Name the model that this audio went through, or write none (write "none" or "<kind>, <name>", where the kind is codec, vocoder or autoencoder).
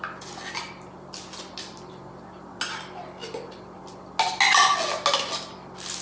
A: none